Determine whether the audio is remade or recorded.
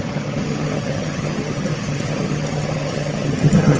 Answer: remade